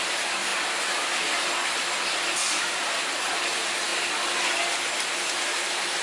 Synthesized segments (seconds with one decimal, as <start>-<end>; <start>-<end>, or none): 0.0-0.5; 2.6-3.9